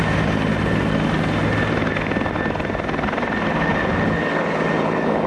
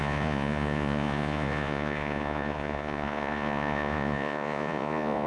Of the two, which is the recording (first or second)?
first